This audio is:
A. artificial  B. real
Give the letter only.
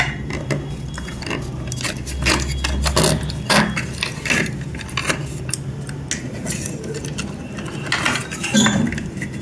B